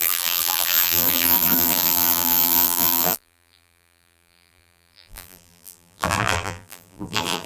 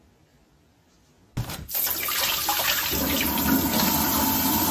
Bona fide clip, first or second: second